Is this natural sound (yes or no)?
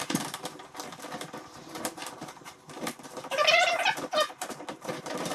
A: no